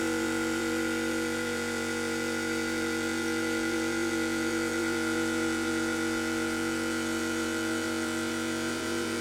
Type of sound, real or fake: fake